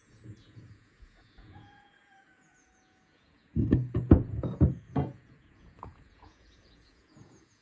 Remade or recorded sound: remade